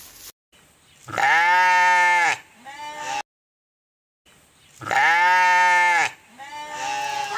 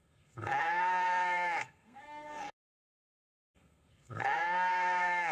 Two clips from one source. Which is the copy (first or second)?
second